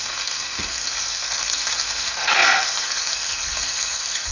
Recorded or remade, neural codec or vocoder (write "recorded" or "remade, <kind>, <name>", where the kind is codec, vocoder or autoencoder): remade, codec, SNAC